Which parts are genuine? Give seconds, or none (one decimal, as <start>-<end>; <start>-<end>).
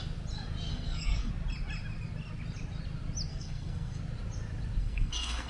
0.0-0.7; 1.3-3.3; 4.0-4.8